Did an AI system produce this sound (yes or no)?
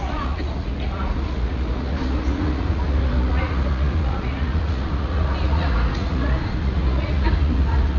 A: yes